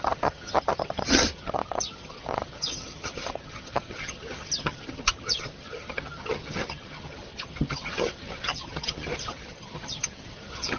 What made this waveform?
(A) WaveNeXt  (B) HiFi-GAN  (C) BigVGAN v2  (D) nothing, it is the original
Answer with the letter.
B